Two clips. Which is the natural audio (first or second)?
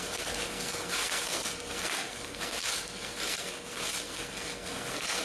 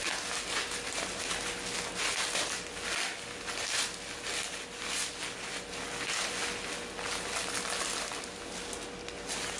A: second